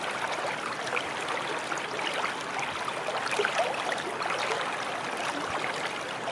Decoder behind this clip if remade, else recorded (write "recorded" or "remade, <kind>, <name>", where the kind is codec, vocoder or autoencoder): recorded